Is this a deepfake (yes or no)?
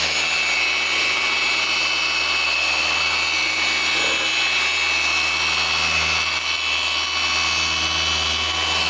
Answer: no